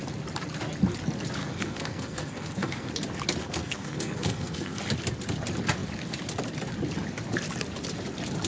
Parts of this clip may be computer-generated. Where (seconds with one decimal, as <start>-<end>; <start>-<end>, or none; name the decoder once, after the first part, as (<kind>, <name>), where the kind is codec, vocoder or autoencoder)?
1.4-2.9 (codec, SNAC); 3.4-4.8